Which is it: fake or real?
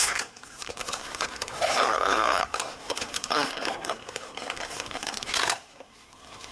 fake